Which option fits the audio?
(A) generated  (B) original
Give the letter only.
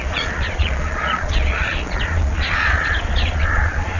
A